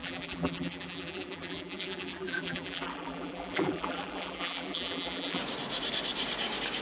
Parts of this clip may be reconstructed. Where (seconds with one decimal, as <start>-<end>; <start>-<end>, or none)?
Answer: 0.0-5.4